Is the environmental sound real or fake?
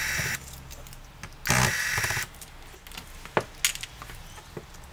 real